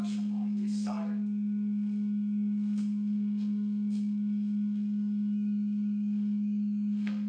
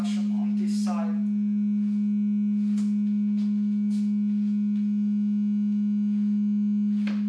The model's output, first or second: first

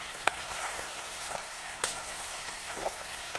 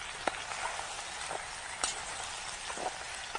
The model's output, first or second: first